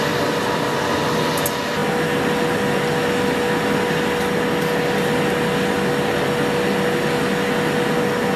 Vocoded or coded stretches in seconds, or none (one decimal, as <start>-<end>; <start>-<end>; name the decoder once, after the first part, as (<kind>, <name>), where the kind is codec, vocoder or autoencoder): none